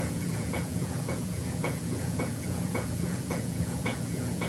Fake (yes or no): yes